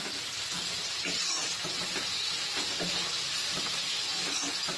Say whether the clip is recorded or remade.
recorded